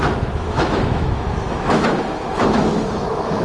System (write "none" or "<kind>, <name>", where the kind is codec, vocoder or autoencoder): autoencoder, DAC-VAE